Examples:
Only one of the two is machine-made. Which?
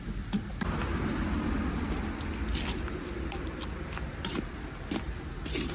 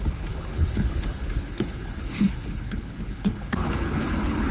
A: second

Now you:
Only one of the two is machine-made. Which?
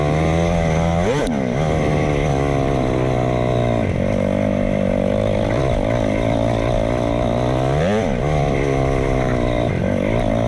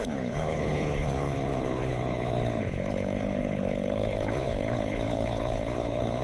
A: second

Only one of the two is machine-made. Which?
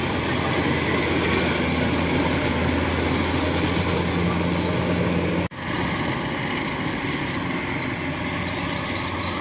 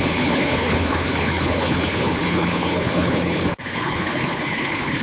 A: second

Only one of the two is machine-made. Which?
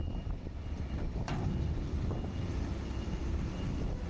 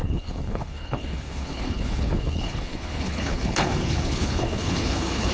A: second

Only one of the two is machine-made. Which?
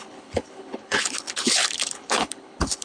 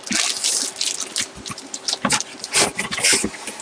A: first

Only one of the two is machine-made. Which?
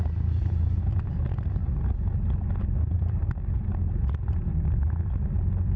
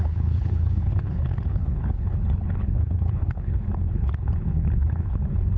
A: second